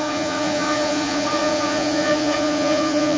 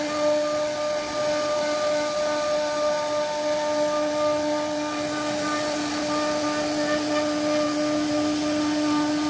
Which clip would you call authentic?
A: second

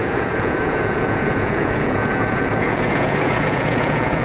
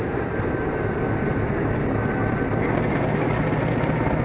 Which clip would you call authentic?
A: second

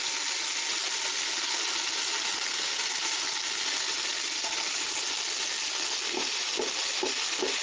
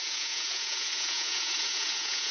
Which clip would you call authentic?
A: first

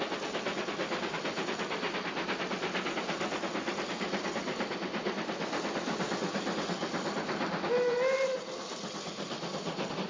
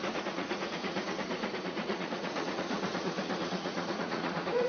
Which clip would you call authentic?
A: first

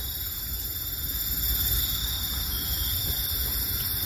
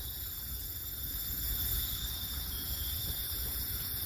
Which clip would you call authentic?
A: first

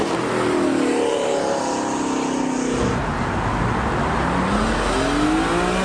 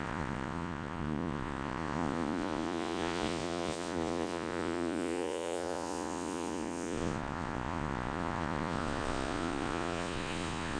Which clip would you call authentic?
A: first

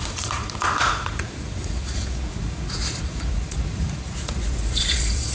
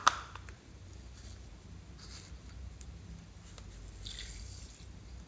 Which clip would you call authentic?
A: second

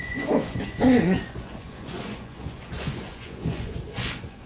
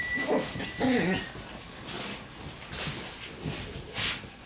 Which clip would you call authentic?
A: second